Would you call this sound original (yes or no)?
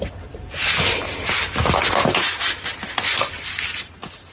yes